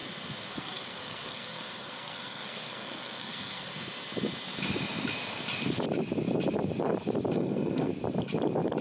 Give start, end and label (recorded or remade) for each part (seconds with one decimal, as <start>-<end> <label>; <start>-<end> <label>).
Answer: 0.0-0.5 recorded; 0.5-3.7 remade; 3.7-7.3 recorded; 7.3-7.9 remade; 7.9-8.8 recorded